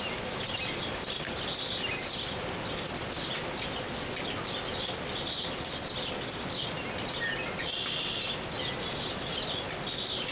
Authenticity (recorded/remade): recorded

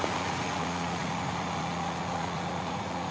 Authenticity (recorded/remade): remade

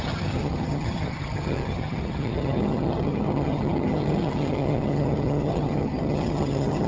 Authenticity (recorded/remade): remade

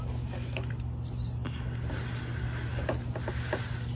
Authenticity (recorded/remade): recorded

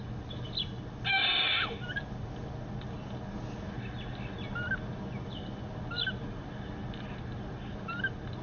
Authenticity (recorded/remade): recorded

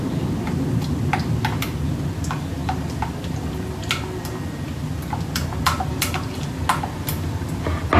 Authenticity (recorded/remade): recorded